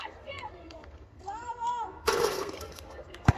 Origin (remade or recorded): remade